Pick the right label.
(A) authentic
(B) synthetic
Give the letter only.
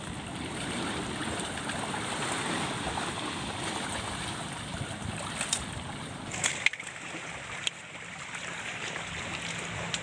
A